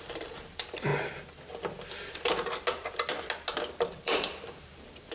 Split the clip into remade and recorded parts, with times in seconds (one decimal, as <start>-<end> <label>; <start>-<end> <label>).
0.0-0.9 remade; 0.9-4.0 recorded; 4.0-5.1 remade